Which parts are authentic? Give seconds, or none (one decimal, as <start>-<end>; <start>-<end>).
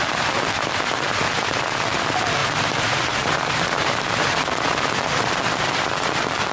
0.0-2.4; 4.9-6.5